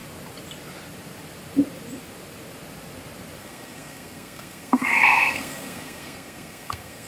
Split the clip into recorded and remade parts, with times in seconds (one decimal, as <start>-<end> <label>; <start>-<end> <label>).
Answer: 0.0-3.4 recorded; 3.4-7.1 remade